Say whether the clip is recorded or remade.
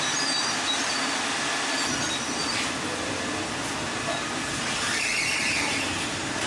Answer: recorded